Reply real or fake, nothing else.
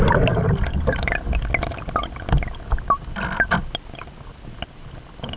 real